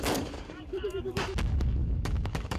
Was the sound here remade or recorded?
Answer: remade